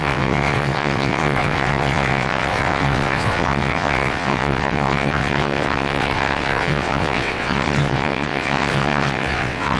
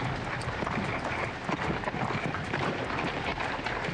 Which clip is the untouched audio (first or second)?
second